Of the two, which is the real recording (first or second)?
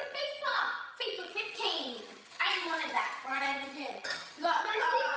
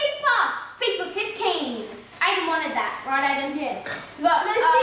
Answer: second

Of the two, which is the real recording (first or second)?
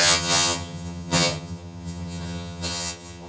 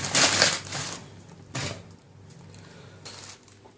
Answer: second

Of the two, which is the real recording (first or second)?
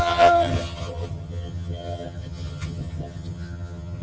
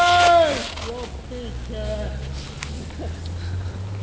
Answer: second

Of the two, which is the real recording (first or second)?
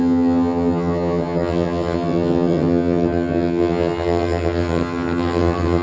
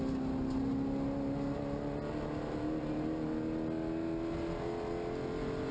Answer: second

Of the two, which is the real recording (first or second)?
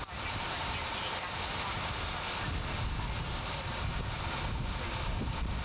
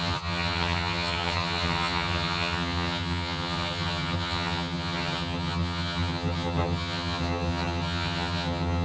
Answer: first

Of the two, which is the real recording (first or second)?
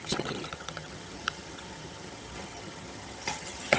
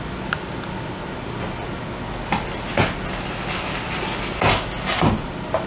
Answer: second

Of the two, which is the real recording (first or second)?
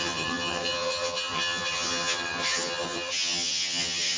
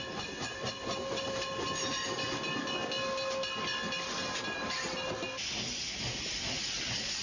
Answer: second